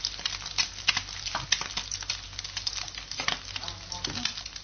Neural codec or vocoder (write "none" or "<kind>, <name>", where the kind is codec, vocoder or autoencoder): none